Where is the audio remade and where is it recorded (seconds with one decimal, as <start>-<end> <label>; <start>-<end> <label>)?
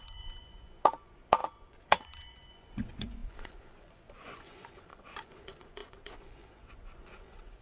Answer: 0.0-7.6 remade